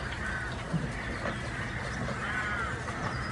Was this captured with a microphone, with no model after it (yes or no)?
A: no